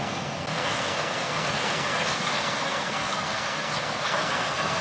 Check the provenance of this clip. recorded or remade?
remade